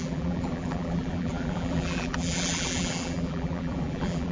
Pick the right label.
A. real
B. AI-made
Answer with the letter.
B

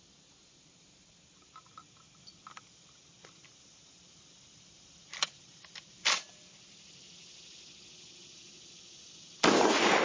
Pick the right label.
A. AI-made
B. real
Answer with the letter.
B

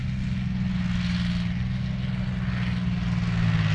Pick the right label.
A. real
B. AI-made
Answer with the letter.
A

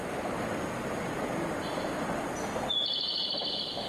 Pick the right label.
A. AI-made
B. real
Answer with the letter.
B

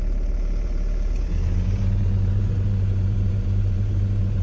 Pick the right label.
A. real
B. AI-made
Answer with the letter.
B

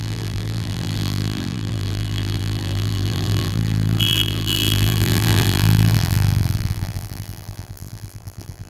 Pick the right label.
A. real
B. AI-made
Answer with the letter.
B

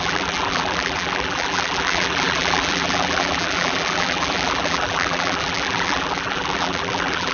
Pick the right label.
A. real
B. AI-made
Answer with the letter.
B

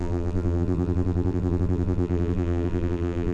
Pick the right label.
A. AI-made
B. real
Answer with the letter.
A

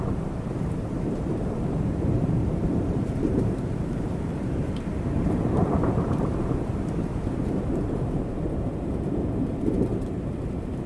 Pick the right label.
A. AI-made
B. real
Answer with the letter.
A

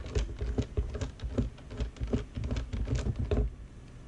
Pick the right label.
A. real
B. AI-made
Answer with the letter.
A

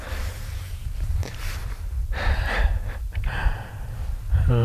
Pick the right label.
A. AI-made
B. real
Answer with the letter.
A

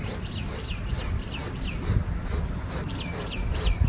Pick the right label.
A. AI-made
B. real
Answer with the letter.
B